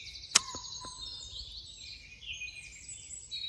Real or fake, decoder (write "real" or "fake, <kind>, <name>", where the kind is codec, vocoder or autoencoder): real